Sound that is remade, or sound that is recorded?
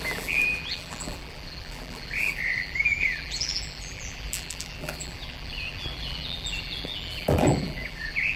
remade